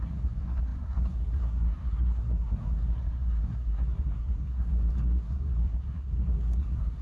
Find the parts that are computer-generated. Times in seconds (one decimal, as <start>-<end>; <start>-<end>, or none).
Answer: 0.0-7.0